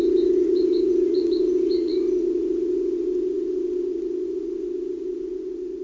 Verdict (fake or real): fake